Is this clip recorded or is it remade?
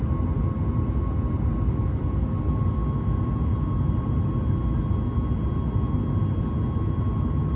recorded